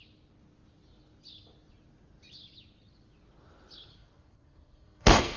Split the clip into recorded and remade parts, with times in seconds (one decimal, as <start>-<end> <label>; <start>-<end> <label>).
0.0-3.9 recorded; 3.9-5.4 remade